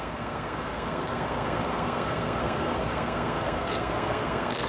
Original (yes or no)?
no